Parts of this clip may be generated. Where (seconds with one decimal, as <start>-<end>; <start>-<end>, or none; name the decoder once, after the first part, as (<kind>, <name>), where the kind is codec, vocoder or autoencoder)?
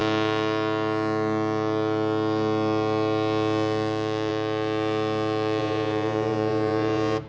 5.6-7.3 (vocoder, Vocos)